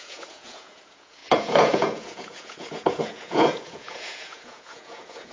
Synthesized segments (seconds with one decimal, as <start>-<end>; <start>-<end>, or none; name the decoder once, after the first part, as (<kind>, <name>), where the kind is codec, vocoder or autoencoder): 0.0-5.3 (vocoder, Vocos)